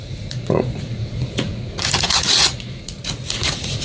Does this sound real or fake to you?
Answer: fake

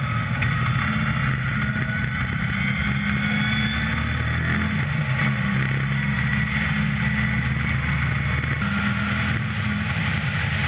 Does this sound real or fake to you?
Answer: real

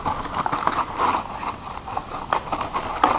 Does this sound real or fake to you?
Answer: real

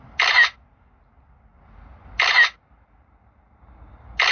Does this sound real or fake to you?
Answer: real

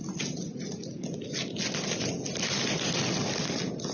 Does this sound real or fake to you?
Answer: real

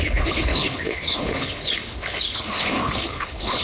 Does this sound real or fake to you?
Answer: fake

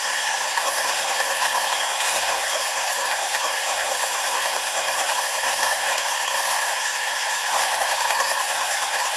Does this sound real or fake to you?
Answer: fake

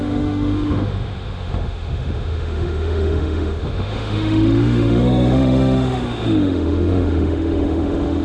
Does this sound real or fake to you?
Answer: fake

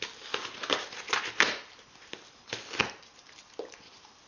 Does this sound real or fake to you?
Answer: real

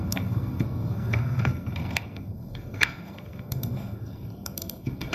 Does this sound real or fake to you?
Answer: fake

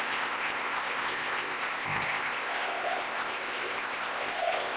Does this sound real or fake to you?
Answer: fake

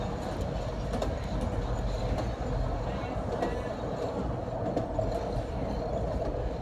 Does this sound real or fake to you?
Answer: real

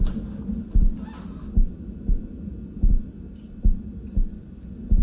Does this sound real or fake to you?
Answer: real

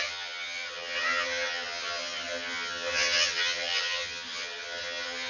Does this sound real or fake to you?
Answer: fake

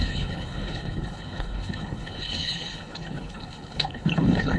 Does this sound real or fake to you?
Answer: fake